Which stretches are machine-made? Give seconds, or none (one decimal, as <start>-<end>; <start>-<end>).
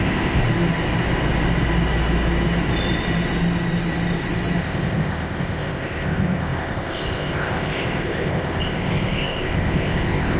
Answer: 0.0-0.4; 4.6-10.4